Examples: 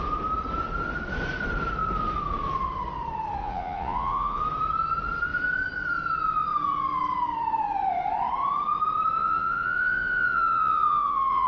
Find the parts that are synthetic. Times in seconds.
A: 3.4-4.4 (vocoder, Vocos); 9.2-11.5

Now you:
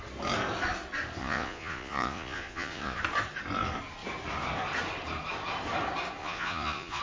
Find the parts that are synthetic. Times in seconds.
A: 1.2-3.0 (vocoder, Vocos); 6.2-7.0

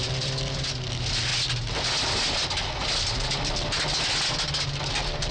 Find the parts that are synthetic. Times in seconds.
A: 0.0-0.7 (vocoder, BigVGAN v2)